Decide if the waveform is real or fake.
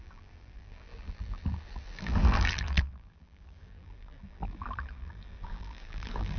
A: fake